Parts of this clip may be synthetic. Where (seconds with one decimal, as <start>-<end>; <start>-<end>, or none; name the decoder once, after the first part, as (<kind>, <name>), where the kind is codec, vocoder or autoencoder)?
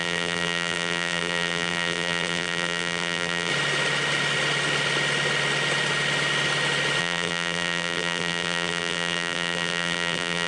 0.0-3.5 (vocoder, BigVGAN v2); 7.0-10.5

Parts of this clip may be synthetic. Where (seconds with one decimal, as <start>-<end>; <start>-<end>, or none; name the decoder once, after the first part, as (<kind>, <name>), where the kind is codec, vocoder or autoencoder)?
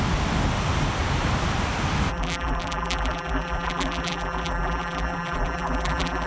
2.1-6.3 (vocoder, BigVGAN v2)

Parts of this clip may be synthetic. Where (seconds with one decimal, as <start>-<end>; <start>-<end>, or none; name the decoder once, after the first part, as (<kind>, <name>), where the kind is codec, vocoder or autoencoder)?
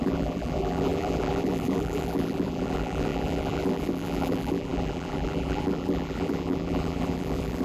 0.0-7.6 (vocoder, BigVGAN v2)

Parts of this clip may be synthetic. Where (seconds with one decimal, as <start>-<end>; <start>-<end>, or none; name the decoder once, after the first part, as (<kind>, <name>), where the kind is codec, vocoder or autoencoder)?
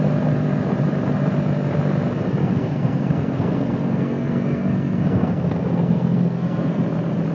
2.4-6.8 (codec, SNAC)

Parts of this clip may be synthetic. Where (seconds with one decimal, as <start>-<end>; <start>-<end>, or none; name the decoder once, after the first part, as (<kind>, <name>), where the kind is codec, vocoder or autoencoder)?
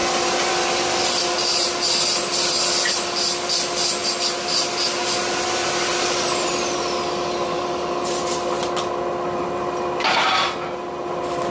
none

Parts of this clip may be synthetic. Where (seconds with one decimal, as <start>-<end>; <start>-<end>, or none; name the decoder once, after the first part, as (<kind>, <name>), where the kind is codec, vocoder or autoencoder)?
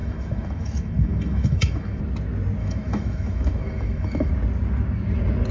0.0-2.0 (autoencoder, DAC-VAE); 2.6-4.3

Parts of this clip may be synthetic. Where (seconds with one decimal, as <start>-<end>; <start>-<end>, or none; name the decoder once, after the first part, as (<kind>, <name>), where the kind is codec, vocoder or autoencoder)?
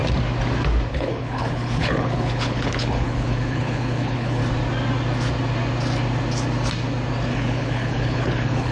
0.9-4.4 (codec, HILCodec); 7.3-8.7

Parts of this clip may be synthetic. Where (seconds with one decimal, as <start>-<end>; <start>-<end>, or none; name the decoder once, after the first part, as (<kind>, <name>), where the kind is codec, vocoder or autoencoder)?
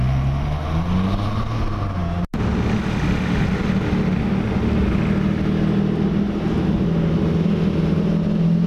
none